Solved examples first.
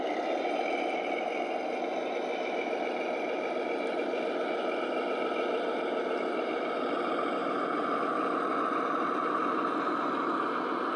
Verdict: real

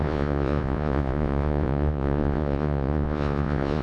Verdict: fake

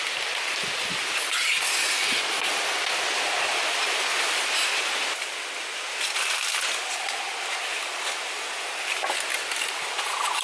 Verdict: real